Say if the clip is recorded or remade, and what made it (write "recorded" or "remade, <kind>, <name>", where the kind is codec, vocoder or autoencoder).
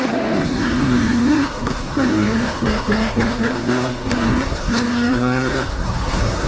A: remade, codec, SNAC